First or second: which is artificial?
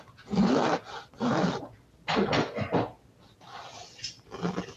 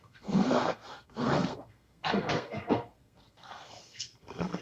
second